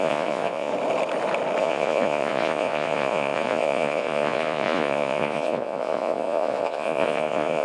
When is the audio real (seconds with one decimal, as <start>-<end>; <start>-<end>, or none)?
0.7-1.6

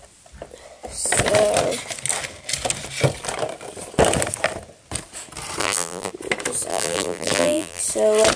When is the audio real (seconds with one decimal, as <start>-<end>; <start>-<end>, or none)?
0.0-5.6; 6.1-6.7; 7.8-8.4

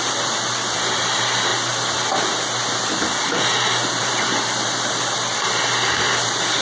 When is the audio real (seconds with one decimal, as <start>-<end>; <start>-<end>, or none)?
0.0-6.6

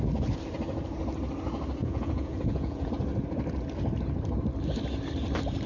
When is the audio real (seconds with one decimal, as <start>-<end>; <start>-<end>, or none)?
0.0-1.8; 2.9-5.7

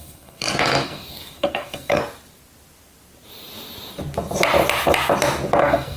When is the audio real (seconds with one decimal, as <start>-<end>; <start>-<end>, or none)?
2.0-5.6

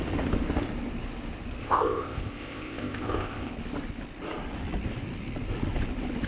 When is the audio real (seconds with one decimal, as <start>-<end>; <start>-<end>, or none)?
0.0-1.6; 3.5-6.3